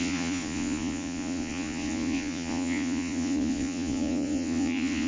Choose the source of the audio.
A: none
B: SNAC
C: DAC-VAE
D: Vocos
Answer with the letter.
D